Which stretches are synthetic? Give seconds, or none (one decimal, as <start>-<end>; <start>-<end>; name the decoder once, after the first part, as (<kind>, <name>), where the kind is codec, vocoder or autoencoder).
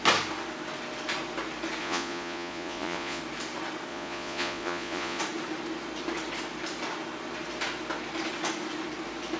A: 1.8-3.2 (vocoder, Vocos); 3.9-5.2